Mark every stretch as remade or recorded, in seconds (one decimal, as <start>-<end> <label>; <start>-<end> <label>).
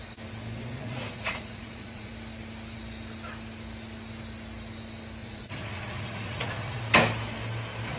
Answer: 0.0-0.8 recorded; 0.8-2.1 remade; 2.1-5.2 recorded; 5.2-6.8 remade; 6.8-8.0 recorded